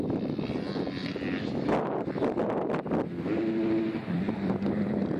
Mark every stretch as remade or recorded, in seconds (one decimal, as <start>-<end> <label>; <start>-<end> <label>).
0.0-5.2 recorded